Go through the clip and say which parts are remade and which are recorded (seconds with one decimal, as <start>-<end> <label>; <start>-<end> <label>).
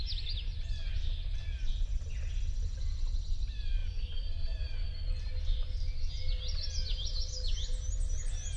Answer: 0.0-8.6 recorded